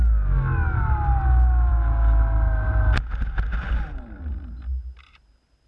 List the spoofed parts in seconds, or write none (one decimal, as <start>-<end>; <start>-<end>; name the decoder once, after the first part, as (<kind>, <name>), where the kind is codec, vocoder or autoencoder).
none